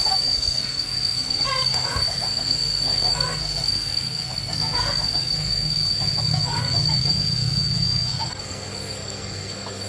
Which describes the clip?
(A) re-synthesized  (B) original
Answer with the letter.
A